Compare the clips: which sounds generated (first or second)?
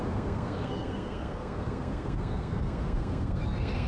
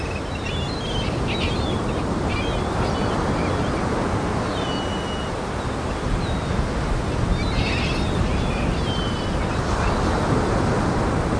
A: first